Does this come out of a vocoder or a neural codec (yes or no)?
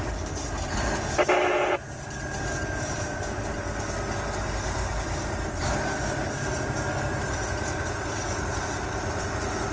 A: no